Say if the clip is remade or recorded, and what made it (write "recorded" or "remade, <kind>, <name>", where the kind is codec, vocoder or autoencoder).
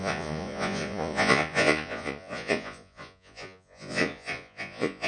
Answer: remade, vocoder, Vocos